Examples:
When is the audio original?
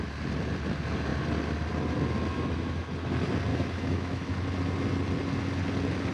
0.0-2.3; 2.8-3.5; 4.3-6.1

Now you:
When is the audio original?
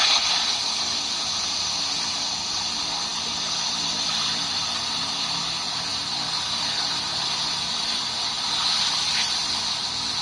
0.0-10.2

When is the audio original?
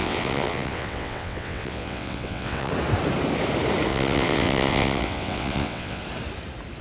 2.7-3.9; 6.0-6.8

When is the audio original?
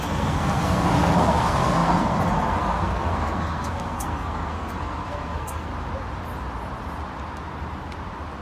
5.7-8.4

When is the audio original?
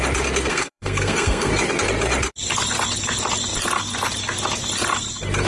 0.0-0.5; 1.5-5.5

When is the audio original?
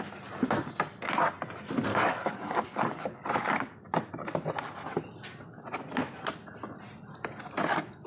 0.0-1.9; 3.2-8.1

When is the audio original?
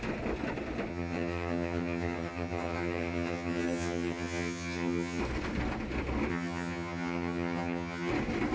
0.0-0.9; 5.2-6.3; 8.1-8.5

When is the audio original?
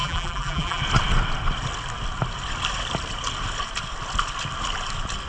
0.8-5.3